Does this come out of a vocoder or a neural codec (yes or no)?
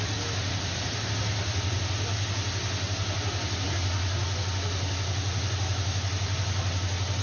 no